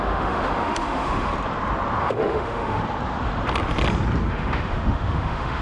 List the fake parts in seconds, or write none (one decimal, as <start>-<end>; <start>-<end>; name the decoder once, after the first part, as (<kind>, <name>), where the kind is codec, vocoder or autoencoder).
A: 0.0-1.3 (autoencoder, DAC-VAE); 2.0-2.8; 4.3-5.6